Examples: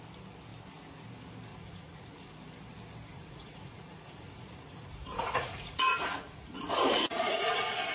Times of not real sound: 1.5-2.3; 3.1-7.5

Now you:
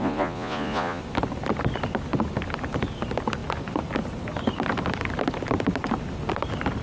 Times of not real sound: 0.0-1.0

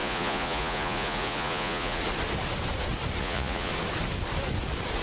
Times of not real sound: 0.0-2.0; 3.2-3.7

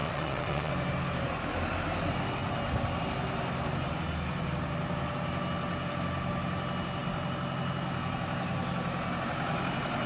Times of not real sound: 0.0-0.7

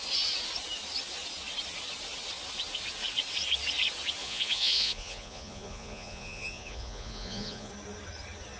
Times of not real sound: 4.2-7.7

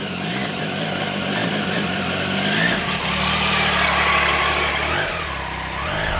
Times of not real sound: none

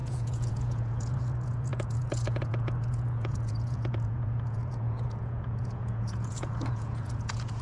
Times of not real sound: 0.0-7.6

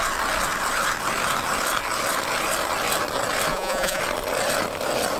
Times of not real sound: 3.5-4.0